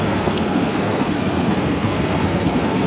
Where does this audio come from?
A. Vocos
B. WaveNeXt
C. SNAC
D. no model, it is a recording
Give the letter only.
C